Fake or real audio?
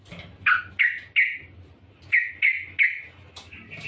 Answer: real